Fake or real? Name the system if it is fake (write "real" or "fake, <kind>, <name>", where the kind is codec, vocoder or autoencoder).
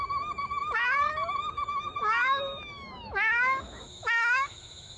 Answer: fake, autoencoder, DAC-VAE